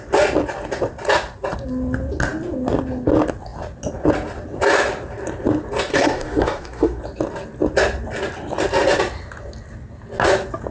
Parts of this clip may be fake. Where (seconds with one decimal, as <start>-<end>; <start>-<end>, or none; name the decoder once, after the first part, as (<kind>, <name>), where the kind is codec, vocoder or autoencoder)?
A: 5.9-7.0 (codec, SNAC)